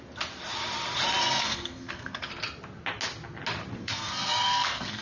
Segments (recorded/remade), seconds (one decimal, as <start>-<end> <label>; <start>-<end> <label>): 0.0-1.2 recorded; 1.2-2.3 remade; 2.3-3.8 recorded; 3.8-5.0 remade